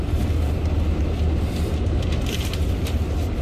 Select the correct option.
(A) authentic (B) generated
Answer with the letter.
A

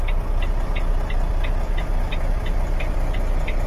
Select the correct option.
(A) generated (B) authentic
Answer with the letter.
A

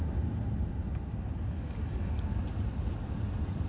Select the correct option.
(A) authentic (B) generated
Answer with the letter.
A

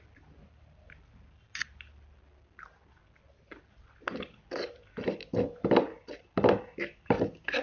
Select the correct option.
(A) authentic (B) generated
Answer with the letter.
A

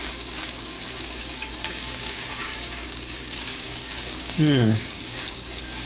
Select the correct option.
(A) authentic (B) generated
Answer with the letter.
B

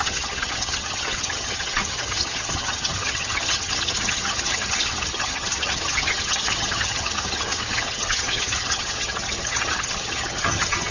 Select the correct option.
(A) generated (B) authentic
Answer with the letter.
A